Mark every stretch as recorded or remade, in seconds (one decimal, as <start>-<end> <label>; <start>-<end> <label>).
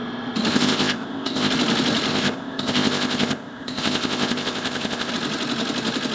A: 0.0-0.5 recorded; 0.5-1.5 remade; 1.5-2.1 recorded; 2.1-5.1 remade; 5.1-6.1 recorded